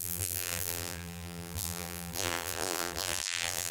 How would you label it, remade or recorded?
remade